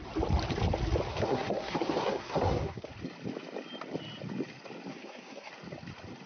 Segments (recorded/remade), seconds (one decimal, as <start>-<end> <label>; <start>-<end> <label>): 0.0-1.1 recorded; 1.1-2.9 remade; 2.9-4.9 recorded; 4.9-5.5 remade; 5.5-6.3 recorded